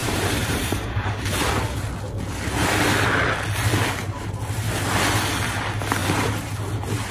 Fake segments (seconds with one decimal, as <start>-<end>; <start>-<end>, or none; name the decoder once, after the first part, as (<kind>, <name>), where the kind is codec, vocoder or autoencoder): 0.0-1.5 (vocoder, BigVGAN v2); 6.0-6.5